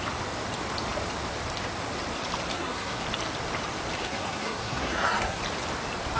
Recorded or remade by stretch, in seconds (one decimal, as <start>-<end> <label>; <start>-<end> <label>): 0.0-2.5 recorded; 2.5-3.0 remade; 3.0-4.0 recorded; 4.0-5.4 remade; 5.4-6.2 recorded